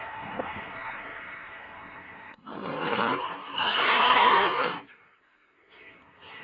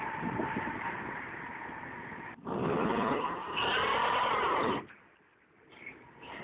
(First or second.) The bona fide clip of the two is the second